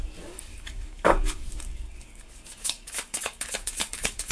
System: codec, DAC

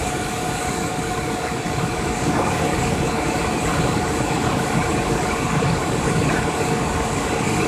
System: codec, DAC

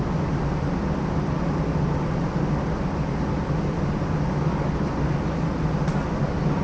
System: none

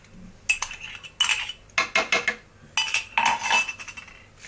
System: none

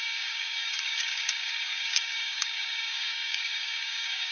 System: codec, DAC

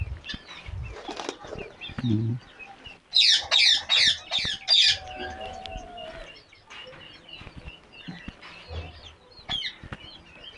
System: none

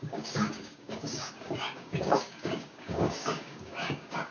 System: codec, DAC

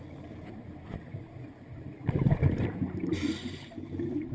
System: none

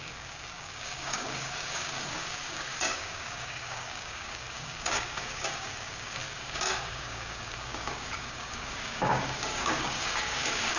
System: codec, DAC